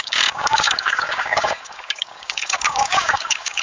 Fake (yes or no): yes